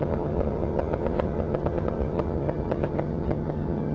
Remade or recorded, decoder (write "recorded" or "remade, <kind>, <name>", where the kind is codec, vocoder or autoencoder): remade, vocoder, HiFi-GAN